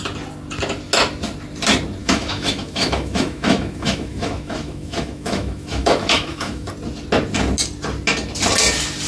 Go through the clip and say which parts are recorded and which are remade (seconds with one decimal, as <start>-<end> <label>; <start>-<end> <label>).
0.0-2.0 recorded; 2.0-6.7 remade; 6.7-9.1 recorded